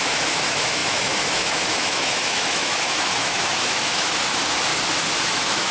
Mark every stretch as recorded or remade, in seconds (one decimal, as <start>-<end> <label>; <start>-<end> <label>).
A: 0.0-4.7 remade; 4.7-5.2 recorded; 5.2-5.7 remade